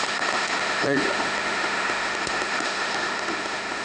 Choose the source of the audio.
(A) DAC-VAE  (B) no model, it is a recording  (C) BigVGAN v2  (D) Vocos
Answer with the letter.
A